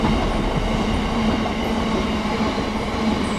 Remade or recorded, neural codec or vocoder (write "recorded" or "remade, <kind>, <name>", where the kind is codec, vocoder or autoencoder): recorded